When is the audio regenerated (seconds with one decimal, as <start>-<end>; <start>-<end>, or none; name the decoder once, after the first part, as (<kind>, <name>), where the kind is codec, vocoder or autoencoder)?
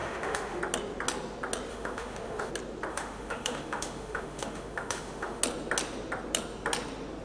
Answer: 0.0-0.6 (autoencoder, DAC-VAE); 1.7-2.5; 2.9-5.4